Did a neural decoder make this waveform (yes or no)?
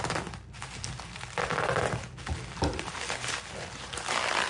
no